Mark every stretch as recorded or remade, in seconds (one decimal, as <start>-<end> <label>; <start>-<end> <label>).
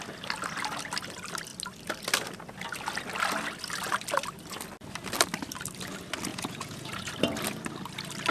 0.0-6.3 recorded; 6.3-7.1 remade; 7.1-8.3 recorded